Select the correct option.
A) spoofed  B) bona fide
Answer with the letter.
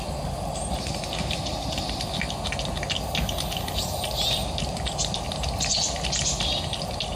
B